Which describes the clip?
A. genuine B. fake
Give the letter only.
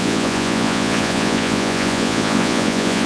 B